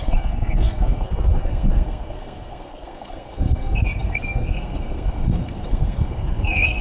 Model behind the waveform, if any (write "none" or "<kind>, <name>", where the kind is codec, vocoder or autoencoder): codec, SNAC